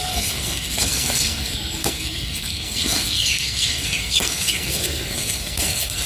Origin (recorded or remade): remade